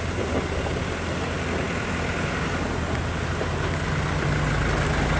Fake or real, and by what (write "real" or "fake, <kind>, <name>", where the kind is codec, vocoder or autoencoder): real